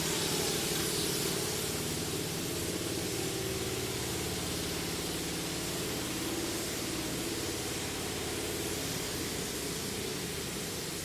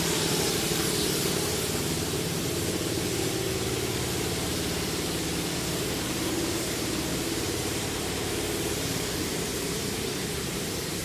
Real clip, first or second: first